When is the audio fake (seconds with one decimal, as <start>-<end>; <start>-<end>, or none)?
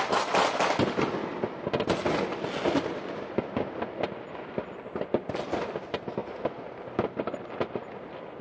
none